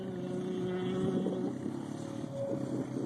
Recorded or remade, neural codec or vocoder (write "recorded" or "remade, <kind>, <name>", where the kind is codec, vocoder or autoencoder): recorded